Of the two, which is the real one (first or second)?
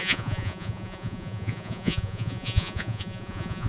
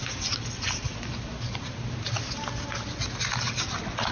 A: second